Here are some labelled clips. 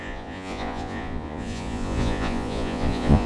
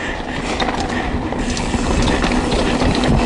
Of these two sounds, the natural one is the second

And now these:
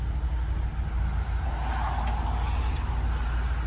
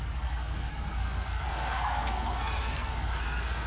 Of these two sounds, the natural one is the first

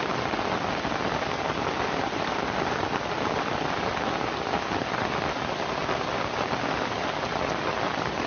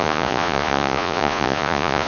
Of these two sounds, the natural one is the first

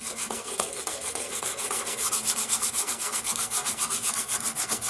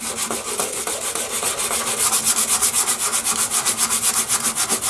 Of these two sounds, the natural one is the second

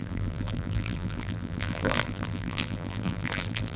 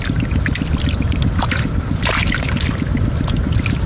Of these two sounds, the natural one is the second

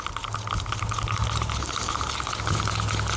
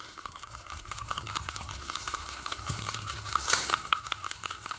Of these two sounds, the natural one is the first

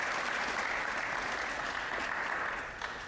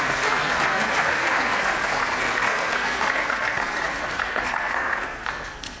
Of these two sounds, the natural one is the first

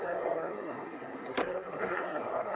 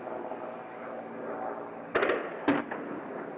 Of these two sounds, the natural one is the second